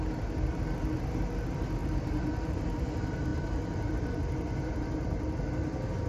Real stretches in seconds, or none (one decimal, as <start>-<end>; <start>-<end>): 0.0-1.8; 2.9-6.1